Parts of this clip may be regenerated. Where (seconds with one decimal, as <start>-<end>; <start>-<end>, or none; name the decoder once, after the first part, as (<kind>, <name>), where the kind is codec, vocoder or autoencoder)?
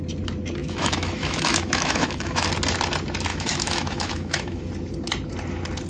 0.6-2.5 (autoencoder, DAC-VAE); 3.3-4.6